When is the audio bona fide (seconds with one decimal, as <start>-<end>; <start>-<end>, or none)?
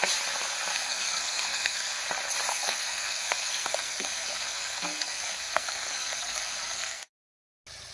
0.0-0.7; 2.0-2.5; 7.2-7.9